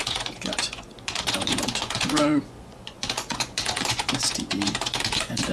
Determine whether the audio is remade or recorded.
remade